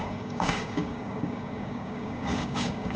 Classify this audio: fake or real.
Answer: fake